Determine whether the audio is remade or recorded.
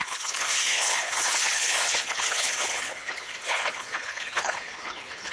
remade